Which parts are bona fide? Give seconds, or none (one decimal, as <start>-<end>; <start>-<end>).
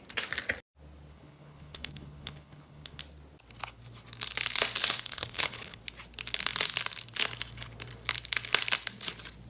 0.0-1.1; 3.0-4.8; 5.8-9.5